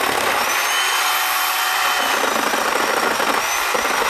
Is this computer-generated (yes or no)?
no